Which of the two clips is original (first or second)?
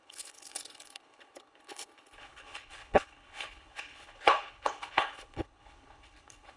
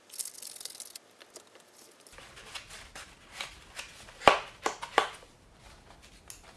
second